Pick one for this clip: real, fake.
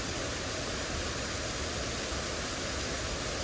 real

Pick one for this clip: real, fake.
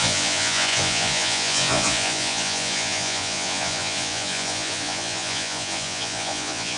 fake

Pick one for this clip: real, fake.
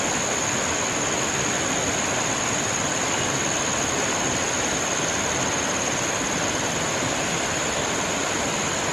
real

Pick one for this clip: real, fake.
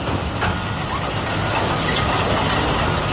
real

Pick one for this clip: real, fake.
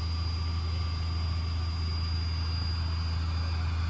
real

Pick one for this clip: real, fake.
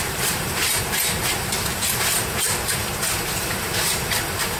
fake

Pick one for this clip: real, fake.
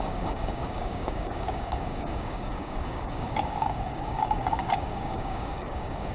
fake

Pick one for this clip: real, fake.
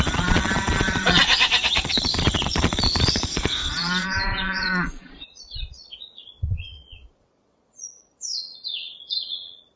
fake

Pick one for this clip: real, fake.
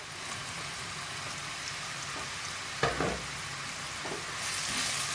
real